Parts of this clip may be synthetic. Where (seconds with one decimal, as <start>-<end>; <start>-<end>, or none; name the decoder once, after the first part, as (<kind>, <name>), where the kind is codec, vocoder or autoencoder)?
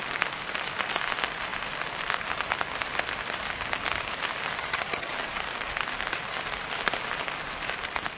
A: 4.6-5.1 (vocoder, HiFi-GAN)